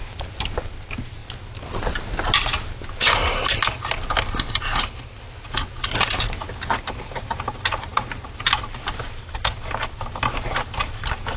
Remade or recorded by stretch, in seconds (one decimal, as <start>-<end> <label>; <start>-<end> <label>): 0.0-11.4 recorded